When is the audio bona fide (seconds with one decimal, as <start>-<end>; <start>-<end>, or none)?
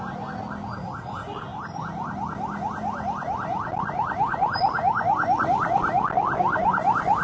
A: 0.0-7.2